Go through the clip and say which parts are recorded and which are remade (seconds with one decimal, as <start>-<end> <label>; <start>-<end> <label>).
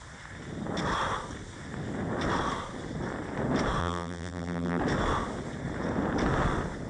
0.0-3.8 recorded; 3.8-4.8 remade; 4.8-6.9 recorded